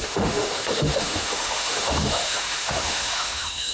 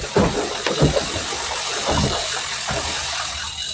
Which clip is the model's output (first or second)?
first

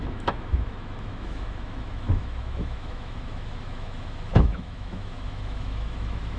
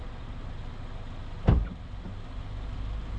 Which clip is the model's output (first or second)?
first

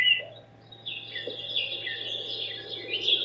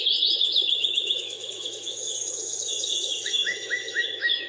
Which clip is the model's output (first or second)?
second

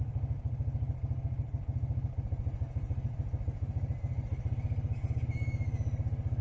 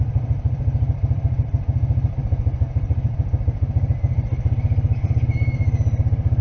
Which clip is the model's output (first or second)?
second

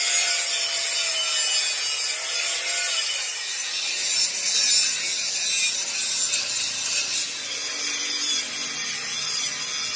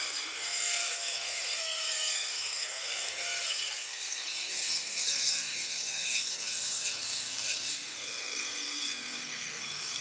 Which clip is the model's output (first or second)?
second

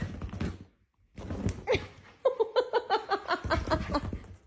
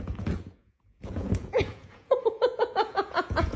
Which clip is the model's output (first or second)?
second